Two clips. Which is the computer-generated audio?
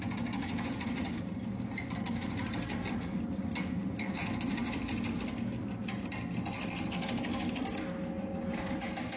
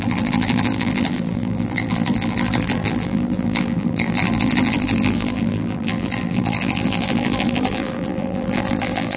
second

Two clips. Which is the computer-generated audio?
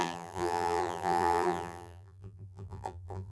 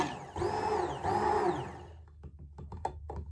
first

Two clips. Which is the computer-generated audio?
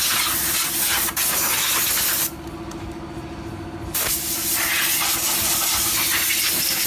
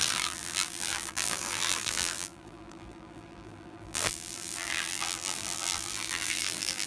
second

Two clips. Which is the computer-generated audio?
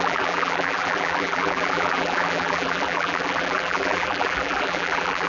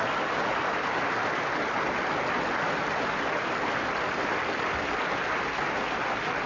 first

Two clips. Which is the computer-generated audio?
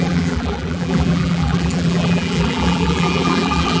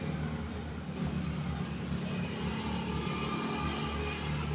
first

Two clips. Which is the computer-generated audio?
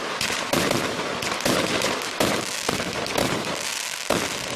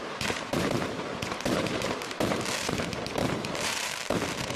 second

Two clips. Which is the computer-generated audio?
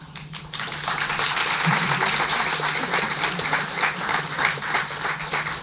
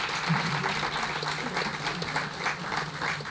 first